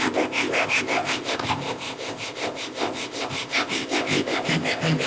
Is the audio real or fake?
fake